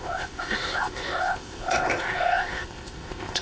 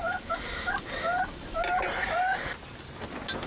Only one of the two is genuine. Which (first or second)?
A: second